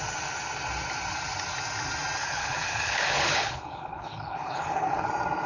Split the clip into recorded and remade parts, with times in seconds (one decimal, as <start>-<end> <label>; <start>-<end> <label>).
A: 0.0-2.2 recorded; 2.2-5.1 remade; 5.1-5.5 recorded